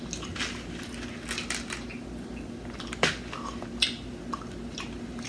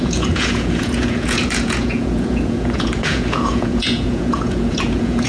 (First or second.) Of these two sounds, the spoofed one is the second